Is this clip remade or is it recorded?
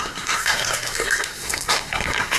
remade